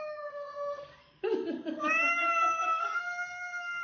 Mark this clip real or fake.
fake